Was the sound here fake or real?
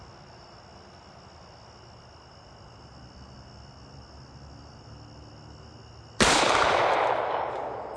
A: real